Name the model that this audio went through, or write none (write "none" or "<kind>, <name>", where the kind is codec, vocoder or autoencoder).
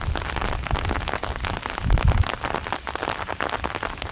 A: none